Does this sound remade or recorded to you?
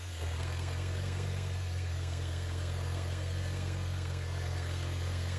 remade